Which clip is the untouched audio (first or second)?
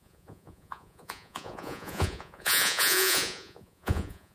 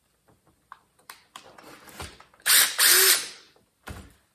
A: second